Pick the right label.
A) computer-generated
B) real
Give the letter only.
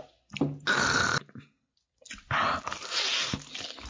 B